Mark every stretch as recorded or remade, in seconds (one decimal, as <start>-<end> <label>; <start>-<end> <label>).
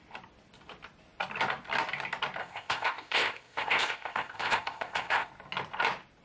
0.0-2.4 recorded; 2.4-5.3 remade; 5.3-6.2 recorded